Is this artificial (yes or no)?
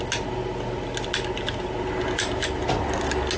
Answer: no